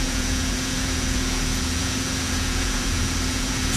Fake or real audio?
fake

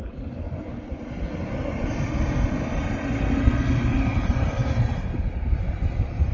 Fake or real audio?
real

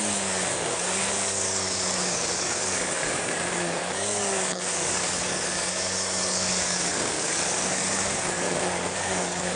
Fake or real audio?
fake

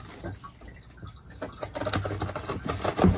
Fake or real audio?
real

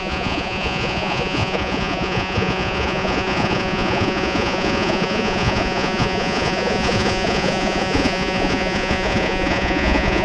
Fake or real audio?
fake